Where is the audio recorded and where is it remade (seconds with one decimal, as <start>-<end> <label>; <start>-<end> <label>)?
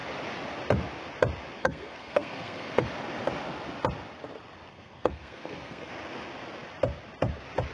0.0-1.6 recorded; 1.6-2.9 remade; 2.9-4.7 recorded; 4.7-5.9 remade; 5.9-7.7 recorded